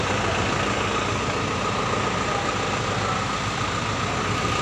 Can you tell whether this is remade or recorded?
recorded